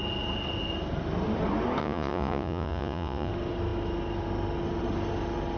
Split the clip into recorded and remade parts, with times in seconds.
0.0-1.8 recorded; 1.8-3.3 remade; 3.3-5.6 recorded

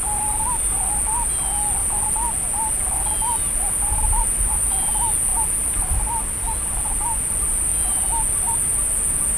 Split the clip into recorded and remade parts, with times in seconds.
0.0-9.4 recorded

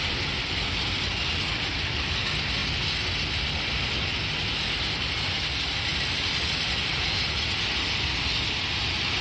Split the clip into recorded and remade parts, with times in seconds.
0.0-9.2 recorded

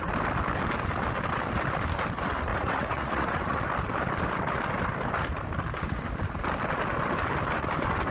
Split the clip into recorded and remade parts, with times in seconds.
0.0-2.5 recorded; 2.5-3.6 remade; 3.6-8.1 recorded

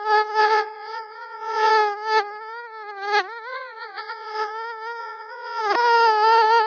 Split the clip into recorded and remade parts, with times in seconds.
0.0-0.4 recorded; 0.4-1.7 remade; 1.7-3.5 recorded; 3.5-4.5 remade; 4.5-5.0 recorded; 5.0-5.6 remade; 5.6-6.7 recorded